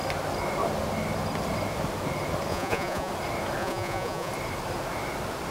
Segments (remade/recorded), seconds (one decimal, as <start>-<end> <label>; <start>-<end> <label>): 0.0-2.5 recorded; 2.5-3.1 remade; 3.1-3.6 recorded; 3.6-4.3 remade; 4.3-5.5 recorded